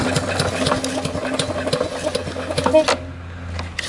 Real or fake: real